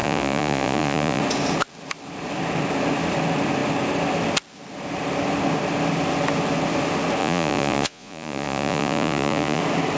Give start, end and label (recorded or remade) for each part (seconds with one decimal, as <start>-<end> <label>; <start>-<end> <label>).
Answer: 0.0-1.2 remade; 1.2-7.2 recorded; 7.2-9.6 remade; 9.6-10.0 recorded